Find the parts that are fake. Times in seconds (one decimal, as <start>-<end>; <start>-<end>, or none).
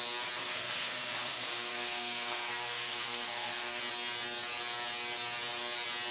0.4-3.8